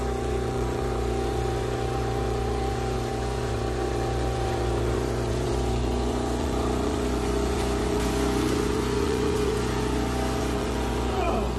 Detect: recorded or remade remade